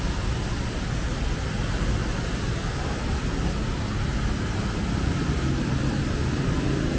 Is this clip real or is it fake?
real